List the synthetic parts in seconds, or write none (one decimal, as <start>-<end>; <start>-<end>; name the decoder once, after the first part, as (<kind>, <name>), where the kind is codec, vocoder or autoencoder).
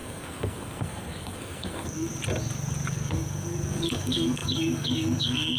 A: 0.0-2.1 (codec, SNAC); 2.9-5.6